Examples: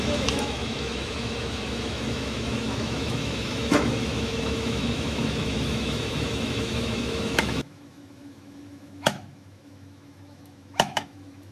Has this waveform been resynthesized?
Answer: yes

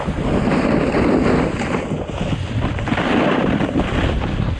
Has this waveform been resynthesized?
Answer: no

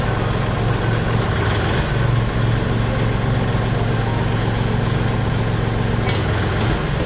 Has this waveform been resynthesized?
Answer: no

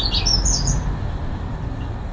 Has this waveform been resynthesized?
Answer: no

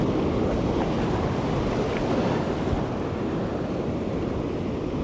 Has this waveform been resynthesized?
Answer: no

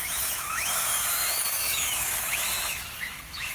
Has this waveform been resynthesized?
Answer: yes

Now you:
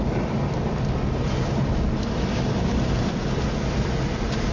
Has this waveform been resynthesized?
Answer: no